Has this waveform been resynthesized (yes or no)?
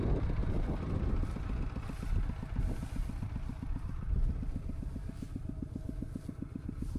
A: no